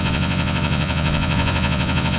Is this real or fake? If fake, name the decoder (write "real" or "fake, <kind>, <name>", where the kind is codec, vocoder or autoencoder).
fake, vocoder, Vocos